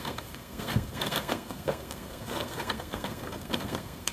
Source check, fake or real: fake